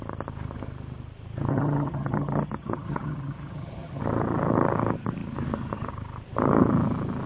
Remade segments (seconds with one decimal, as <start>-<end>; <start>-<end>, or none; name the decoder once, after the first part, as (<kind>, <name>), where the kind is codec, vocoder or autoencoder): 1.5-4.0 (vocoder, HiFi-GAN)